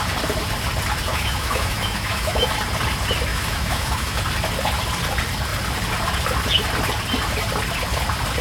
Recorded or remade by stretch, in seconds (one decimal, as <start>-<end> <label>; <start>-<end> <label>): 0.0-1.1 recorded; 1.1-2.5 remade; 2.5-3.3 recorded; 3.3-4.2 remade; 4.2-8.4 recorded